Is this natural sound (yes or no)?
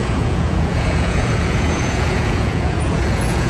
no